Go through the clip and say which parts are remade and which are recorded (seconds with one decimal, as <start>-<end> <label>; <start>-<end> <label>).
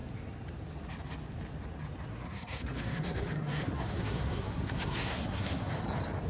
0.0-2.1 recorded; 2.1-5.7 remade; 5.7-6.3 recorded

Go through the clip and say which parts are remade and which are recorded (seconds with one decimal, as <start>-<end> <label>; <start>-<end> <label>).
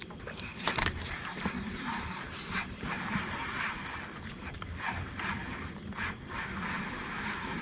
0.0-7.6 recorded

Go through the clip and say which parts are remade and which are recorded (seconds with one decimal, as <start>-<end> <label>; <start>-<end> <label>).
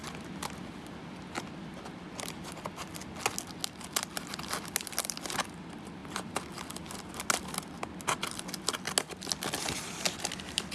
0.0-10.7 recorded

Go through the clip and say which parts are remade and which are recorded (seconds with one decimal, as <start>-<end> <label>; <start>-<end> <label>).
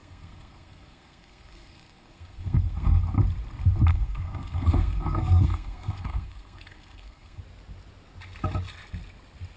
0.0-3.0 remade; 3.0-3.9 recorded; 3.9-7.4 remade; 7.4-9.6 recorded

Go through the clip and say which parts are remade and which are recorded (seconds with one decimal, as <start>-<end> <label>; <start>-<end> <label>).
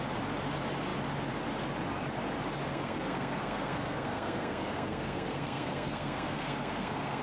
0.0-2.7 recorded; 2.7-7.2 remade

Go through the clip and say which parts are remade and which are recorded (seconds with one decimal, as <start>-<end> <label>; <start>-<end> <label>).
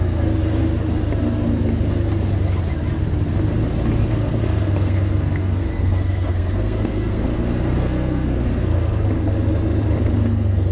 0.0-0.4 remade; 0.4-4.1 recorded; 4.1-7.3 remade; 7.3-7.8 recorded; 7.8-8.7 remade; 8.7-10.1 recorded; 10.1-10.7 remade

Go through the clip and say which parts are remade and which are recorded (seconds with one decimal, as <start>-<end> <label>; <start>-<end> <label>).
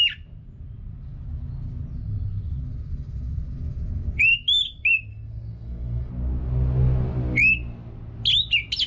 0.0-5.1 recorded; 5.1-6.1 remade; 6.1-8.9 recorded